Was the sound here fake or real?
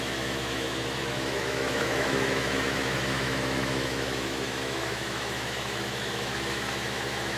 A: fake